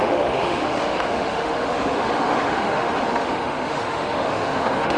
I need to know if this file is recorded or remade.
remade